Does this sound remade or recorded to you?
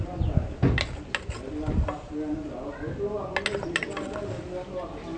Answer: recorded